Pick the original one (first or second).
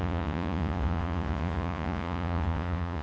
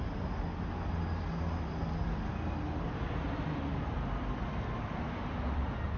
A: second